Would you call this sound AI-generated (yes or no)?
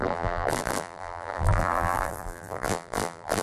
yes